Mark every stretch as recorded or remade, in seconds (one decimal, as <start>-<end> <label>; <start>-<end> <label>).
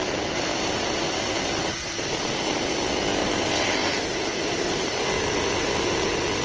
0.0-1.0 remade; 1.0-3.2 recorded; 3.2-5.7 remade; 5.7-6.4 recorded